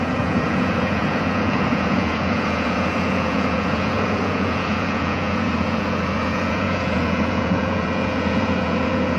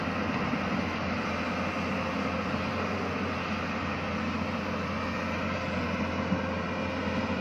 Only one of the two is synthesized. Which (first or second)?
first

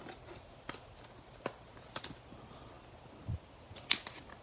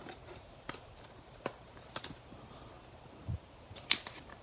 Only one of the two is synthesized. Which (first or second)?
second